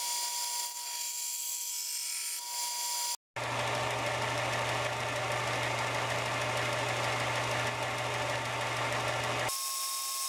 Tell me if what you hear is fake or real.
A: real